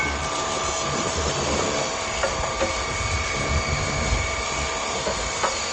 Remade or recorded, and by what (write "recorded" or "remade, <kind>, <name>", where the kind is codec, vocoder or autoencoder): recorded